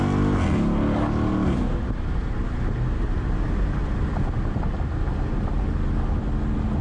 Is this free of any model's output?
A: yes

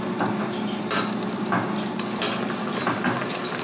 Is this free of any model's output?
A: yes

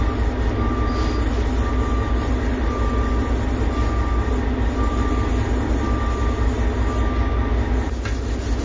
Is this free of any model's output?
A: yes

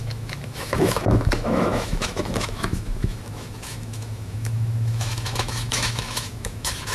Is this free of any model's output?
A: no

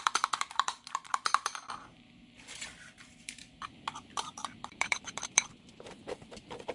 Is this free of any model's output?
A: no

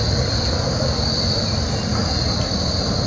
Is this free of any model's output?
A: yes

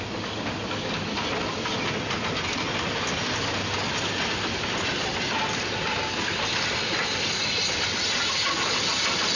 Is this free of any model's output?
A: yes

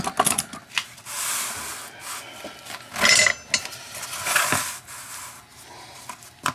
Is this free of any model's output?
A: yes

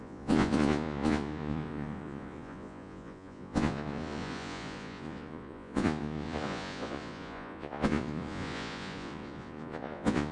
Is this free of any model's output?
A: no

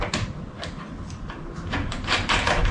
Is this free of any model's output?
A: no